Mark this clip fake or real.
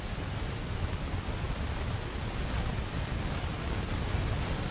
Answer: real